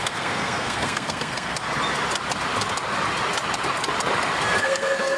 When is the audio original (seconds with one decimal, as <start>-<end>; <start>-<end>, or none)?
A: 1.5-4.6